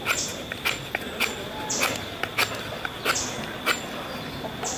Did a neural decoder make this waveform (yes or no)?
no